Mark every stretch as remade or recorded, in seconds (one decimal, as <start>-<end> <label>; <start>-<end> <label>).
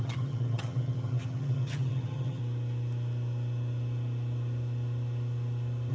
0.0-2.4 remade; 2.4-5.9 recorded